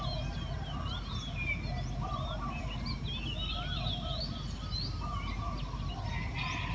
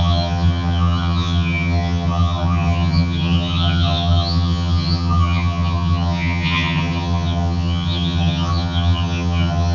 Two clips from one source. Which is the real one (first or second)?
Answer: first